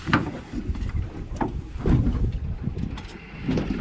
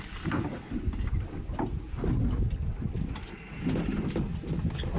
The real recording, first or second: second